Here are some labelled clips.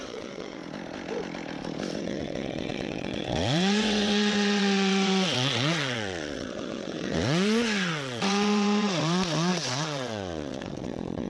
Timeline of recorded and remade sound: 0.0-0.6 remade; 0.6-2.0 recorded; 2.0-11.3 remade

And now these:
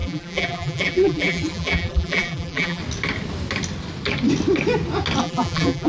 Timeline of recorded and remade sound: 0.0-2.8 remade; 2.8-5.2 recorded; 5.2-5.9 remade

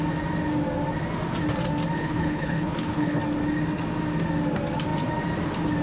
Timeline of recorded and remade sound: 0.0-2.0 recorded; 2.0-3.2 remade; 3.2-5.8 recorded

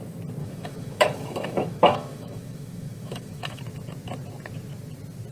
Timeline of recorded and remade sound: 0.0-0.4 recorded; 0.4-3.6 remade; 3.6-5.3 recorded

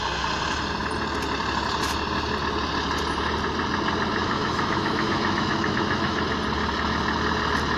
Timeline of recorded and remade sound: 0.0-4.2 recorded; 4.2-6.2 remade; 6.2-7.8 recorded